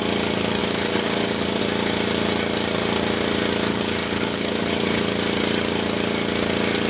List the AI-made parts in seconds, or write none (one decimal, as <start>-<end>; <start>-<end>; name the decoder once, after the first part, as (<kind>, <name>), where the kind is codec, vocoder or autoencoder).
0.6-1.6 (codec, DAC); 3.7-5.0